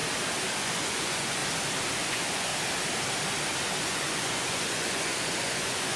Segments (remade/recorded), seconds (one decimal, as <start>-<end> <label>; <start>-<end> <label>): 0.0-0.6 recorded; 0.6-1.4 remade; 1.4-2.0 recorded; 2.0-2.5 remade; 2.5-3.8 recorded; 3.8-6.0 remade